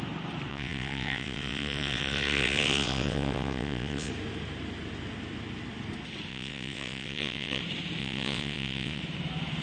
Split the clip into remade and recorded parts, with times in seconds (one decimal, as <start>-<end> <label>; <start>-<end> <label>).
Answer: 0.0-0.5 recorded; 0.5-4.1 remade; 4.1-6.3 recorded; 6.3-7.6 remade; 7.6-8.0 recorded; 8.0-9.0 remade; 9.0-9.6 recorded